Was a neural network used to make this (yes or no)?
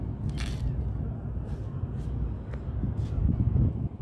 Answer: no